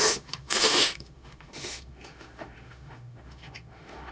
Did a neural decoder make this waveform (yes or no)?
yes